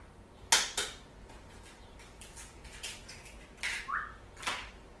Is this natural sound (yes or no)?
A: yes